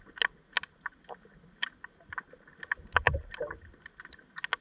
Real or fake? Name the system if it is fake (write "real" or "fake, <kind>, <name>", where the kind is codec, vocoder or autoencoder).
real